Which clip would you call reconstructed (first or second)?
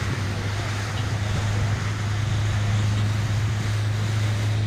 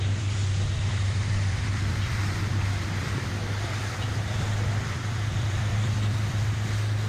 second